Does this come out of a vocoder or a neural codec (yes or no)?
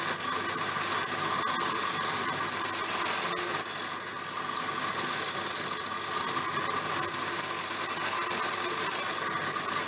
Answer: no